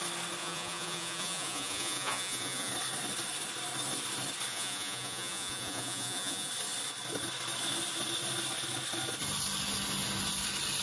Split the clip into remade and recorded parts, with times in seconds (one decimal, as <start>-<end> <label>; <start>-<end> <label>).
0.0-0.4 recorded; 0.4-2.7 remade; 2.7-4.5 recorded; 4.5-6.5 remade; 6.5-10.8 recorded